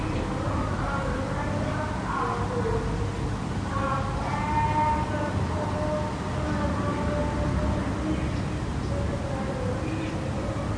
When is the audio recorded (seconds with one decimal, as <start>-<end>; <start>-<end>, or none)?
0.0-10.8